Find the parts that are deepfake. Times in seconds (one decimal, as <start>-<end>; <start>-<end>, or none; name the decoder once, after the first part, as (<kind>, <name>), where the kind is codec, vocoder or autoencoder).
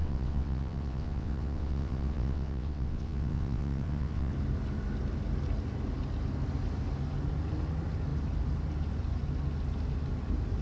0.0-4.3 (vocoder, WaveNeXt)